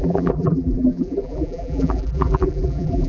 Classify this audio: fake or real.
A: fake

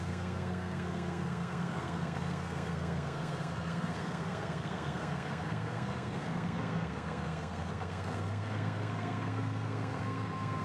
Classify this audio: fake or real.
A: fake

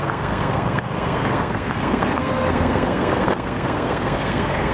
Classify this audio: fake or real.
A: fake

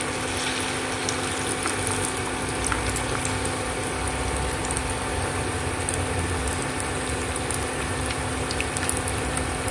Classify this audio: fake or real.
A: real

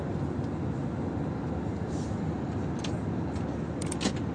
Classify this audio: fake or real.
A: real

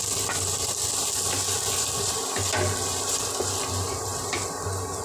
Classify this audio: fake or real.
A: real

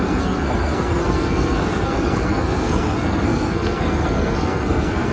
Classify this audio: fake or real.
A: fake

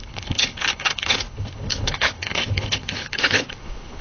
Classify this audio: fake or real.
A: fake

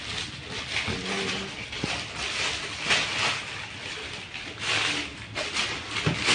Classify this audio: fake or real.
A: real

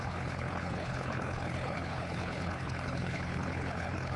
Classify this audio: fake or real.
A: fake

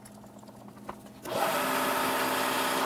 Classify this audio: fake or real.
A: real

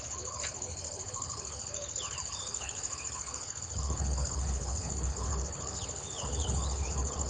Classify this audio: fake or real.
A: fake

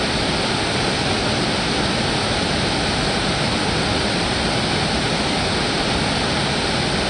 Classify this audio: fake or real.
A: real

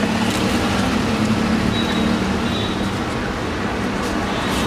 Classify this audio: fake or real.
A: real